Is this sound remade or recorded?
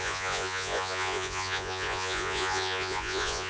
remade